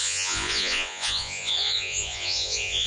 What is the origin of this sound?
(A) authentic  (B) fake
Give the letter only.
B